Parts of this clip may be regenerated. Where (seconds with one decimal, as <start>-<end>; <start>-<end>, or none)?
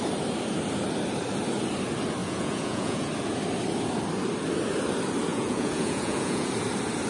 2.2-3.1; 5.3-6.5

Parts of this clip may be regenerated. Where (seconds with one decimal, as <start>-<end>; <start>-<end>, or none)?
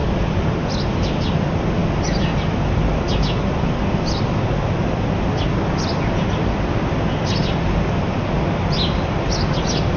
none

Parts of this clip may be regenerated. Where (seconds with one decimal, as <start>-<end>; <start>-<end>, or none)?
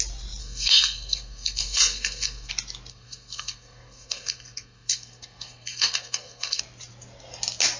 0.4-2.5; 2.9-6.6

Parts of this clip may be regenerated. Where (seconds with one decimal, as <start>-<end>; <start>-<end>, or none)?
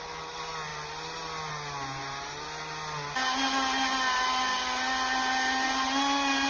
none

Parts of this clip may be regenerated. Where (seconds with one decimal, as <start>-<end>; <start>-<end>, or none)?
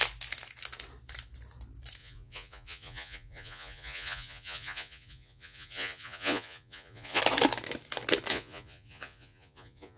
2.0-7.2; 8.3-10.0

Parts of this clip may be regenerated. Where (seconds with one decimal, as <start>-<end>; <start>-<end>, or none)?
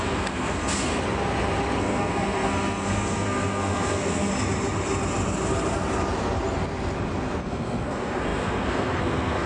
0.0-0.9; 1.8-4.3; 7.4-9.5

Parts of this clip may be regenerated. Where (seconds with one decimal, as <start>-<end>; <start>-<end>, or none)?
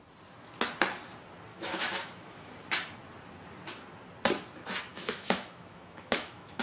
1.5-2.5; 4.9-6.6